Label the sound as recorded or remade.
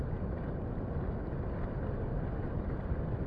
recorded